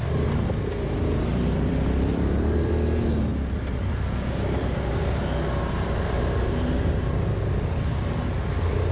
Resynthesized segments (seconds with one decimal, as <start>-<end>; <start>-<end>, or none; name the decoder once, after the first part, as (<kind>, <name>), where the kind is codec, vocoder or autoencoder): 1.3-2.7 (vocoder, BigVGAN v2)